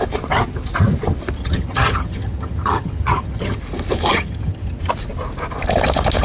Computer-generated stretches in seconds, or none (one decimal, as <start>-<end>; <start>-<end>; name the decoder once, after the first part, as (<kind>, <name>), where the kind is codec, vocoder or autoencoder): 1.4-3.6 (vocoder, HiFi-GAN); 4.1-4.8